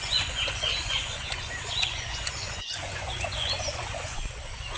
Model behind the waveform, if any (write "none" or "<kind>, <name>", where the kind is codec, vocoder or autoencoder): vocoder, Vocos